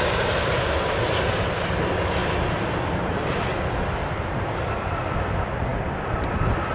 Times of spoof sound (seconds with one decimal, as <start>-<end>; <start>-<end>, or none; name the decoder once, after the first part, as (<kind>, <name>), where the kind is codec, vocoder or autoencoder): none